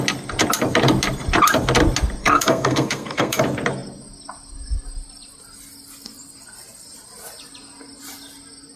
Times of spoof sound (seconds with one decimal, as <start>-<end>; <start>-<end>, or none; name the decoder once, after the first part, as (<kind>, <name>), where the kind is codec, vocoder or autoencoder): 2.2-3.4 (codec, SNAC)